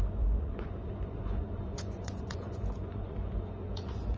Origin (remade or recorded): remade